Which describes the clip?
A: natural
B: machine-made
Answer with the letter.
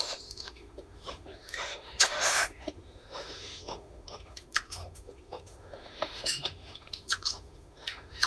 B